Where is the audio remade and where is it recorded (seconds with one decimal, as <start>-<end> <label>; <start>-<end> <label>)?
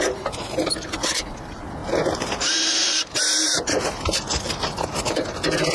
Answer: 0.0-5.7 remade